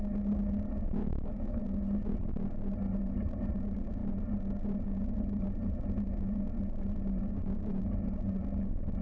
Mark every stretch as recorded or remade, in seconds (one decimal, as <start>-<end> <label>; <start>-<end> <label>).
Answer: 0.0-1.0 recorded; 1.0-1.6 remade; 1.6-9.0 recorded